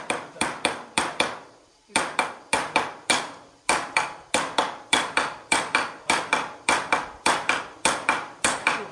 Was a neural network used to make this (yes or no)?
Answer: yes